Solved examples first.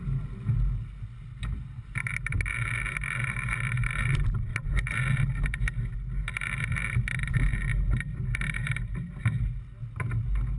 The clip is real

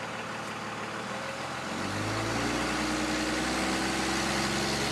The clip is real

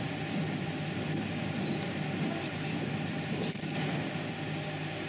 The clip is real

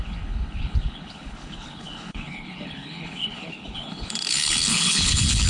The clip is fake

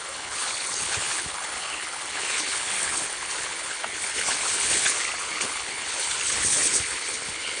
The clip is fake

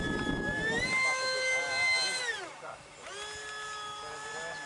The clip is real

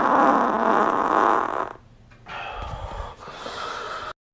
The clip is real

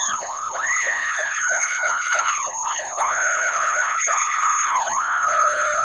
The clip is fake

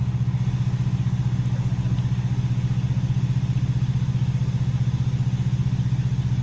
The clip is real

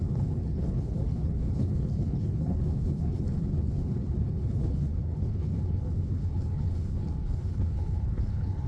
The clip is fake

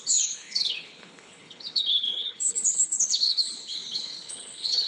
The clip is fake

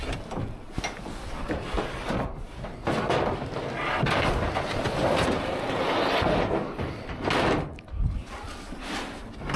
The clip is real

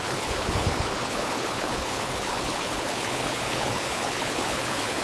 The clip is fake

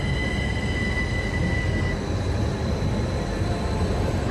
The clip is real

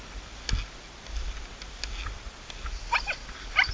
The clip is real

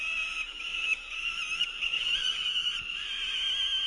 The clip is real